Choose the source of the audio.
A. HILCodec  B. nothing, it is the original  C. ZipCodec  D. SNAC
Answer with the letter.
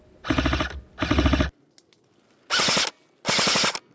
B